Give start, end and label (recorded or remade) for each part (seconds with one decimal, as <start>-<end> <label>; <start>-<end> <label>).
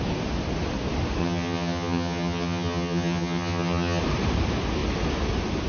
0.0-1.2 recorded; 1.2-4.0 remade; 4.0-5.7 recorded